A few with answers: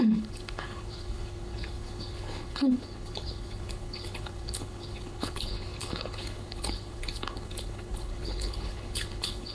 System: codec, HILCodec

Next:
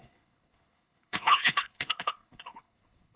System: codec, HILCodec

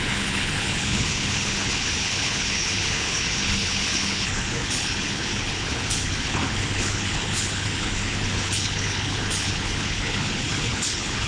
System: codec, HILCodec